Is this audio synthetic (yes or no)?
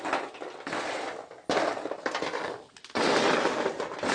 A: no